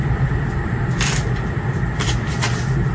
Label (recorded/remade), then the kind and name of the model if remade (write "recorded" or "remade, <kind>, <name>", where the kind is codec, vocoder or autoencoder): recorded